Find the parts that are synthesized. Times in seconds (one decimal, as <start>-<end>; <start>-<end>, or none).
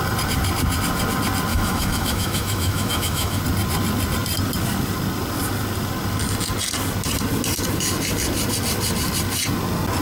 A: 1.5-3.4